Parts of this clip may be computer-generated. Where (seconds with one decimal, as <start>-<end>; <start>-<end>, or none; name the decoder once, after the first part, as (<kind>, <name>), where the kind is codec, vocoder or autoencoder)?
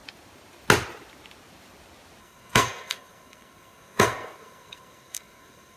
2.2-5.8 (codec, SNAC)